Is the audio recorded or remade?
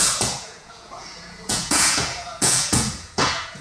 remade